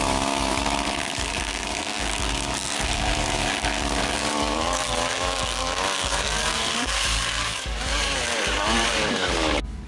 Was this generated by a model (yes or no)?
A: yes